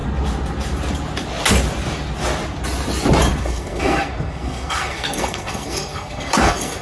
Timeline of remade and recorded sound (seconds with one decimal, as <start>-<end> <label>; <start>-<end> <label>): 0.0-3.4 recorded; 3.4-6.8 remade